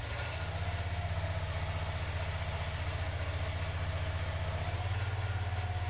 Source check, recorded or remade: recorded